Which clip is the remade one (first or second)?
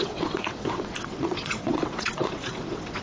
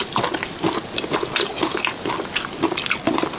first